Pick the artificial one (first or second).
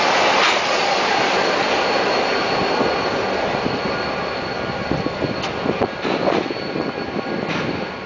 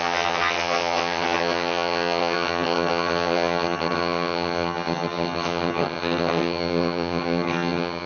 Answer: second